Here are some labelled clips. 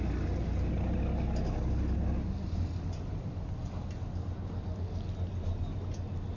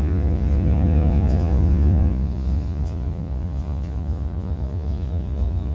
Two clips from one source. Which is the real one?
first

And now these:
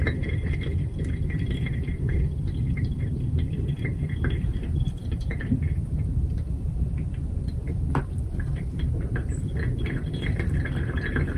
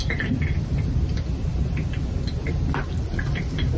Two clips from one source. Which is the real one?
second